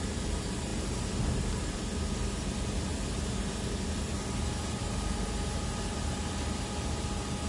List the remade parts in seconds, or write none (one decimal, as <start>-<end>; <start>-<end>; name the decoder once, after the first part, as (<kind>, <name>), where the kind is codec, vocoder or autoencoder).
none